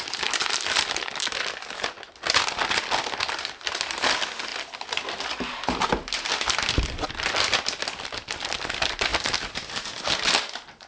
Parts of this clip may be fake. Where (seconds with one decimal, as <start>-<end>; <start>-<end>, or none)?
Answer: none